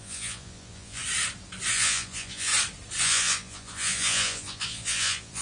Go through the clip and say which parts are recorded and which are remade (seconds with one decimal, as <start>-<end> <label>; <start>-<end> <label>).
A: 0.0-1.0 remade; 1.0-1.7 recorded; 1.7-2.5 remade; 2.5-3.0 recorded; 3.0-5.4 remade